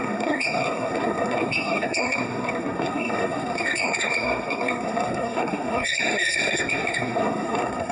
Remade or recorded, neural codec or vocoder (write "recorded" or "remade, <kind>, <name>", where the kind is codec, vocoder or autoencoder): remade, codec, SNAC